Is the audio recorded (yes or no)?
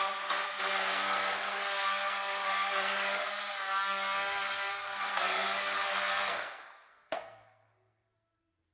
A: no